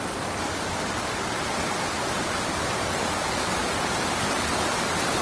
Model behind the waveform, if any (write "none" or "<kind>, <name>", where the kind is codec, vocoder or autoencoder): none